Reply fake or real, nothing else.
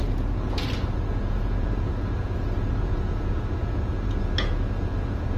fake